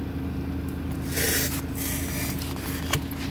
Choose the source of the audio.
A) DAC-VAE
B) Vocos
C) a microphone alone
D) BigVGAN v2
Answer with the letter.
C